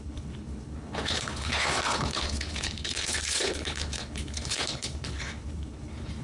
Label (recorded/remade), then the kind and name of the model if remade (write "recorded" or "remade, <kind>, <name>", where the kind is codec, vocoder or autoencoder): remade, codec, HILCodec